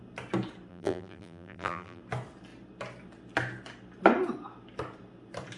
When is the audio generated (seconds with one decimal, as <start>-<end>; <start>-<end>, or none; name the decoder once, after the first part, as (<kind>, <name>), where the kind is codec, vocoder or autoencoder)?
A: 0.7-2.0 (vocoder, BigVGAN v2)

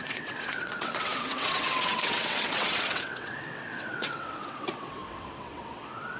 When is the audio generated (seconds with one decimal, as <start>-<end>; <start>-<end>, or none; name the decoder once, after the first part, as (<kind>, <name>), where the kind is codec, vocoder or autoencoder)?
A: 0.0-6.2 (vocoder, WaveNeXt)

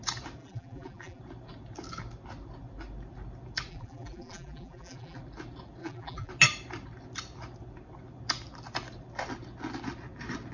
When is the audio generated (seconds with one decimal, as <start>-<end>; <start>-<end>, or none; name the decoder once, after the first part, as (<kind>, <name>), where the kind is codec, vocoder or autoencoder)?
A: 0.4-1.2 (vocoder, BigVGAN v2); 3.7-5.2; 5.8-6.3